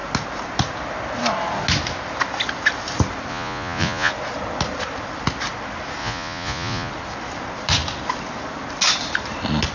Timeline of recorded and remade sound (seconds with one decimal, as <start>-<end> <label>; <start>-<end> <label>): 0.0-3.3 recorded; 3.3-4.1 remade; 4.1-6.0 recorded; 6.0-6.9 remade; 6.9-9.7 recorded